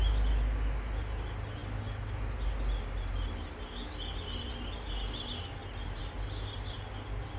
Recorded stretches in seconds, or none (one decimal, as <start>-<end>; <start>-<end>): 0.0-7.4